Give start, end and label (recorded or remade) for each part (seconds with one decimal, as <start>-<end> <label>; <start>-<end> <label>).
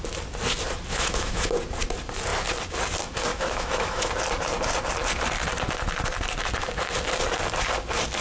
0.0-0.9 recorded; 0.9-1.5 remade; 1.5-3.3 recorded; 3.3-4.1 remade; 4.1-8.2 recorded